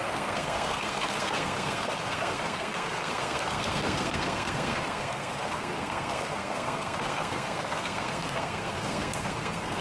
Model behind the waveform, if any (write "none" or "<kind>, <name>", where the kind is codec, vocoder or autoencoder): codec, SNAC